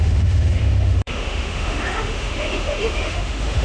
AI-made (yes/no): yes